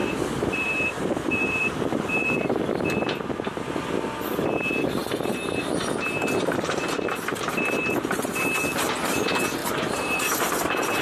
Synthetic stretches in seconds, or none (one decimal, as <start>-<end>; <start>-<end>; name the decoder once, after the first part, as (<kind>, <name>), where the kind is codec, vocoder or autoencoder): 0.0-2.8 (vocoder, BigVGAN v2); 9.6-10.2